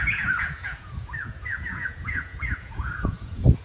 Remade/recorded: remade